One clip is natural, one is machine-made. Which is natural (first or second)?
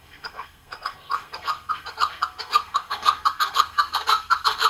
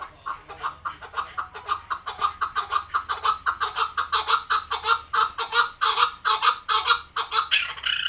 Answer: second